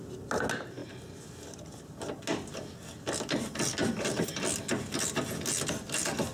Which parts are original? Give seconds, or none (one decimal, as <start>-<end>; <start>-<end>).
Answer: 0.0-6.3